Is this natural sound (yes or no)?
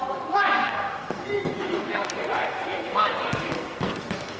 no